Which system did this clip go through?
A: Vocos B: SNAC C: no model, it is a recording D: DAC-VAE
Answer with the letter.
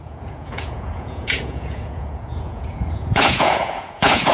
A